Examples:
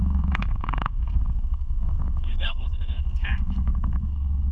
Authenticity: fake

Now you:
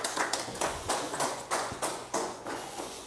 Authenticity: fake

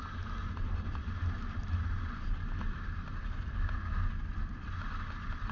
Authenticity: real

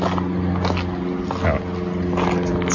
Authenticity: real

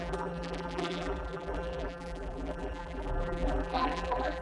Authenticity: fake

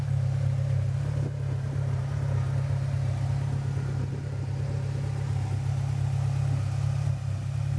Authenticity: real